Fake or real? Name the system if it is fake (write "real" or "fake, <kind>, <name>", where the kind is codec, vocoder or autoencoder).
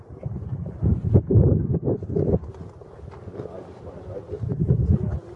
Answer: real